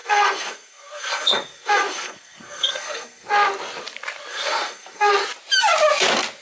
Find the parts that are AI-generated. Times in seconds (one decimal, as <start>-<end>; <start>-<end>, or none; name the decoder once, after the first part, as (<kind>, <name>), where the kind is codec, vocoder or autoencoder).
0.0-3.3 (codec, SNAC); 4.3-5.1